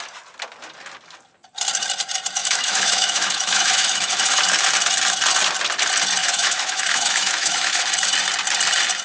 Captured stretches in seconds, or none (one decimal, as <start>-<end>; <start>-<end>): 0.0-2.4; 4.4-6.2; 7.8-9.0